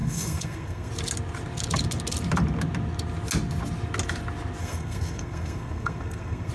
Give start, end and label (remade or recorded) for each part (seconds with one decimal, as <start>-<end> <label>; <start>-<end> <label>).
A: 0.0-0.9 remade; 0.9-4.6 recorded; 4.6-6.5 remade